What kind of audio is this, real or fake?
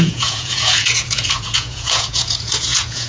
fake